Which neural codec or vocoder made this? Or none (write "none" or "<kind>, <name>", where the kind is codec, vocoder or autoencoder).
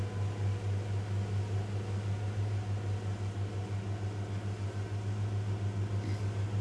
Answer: none